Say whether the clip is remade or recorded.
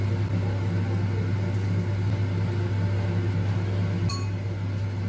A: recorded